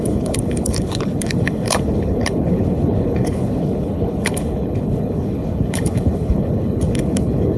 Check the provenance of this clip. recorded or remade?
remade